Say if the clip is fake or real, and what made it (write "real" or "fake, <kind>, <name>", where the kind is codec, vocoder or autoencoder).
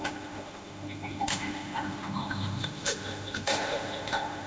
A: fake, autoencoder, DAC-VAE